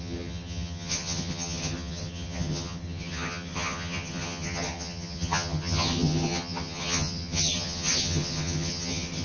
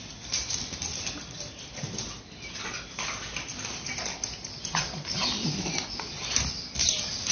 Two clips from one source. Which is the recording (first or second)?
second